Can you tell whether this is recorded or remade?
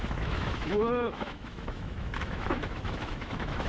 remade